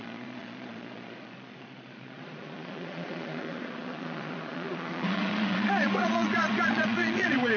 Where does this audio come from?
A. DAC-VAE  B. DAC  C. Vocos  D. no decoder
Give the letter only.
C